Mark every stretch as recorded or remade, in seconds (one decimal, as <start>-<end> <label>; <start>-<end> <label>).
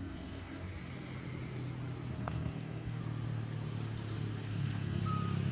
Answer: 0.0-0.7 remade; 0.7-2.1 recorded; 2.1-3.0 remade; 3.0-4.4 recorded; 4.4-5.0 remade; 5.0-5.5 recorded